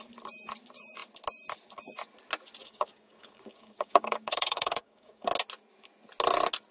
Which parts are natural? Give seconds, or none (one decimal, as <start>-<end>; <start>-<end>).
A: 0.0-2.6; 5.3-6.7